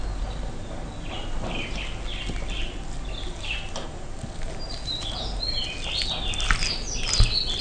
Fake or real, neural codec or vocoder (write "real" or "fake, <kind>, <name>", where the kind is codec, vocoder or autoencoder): real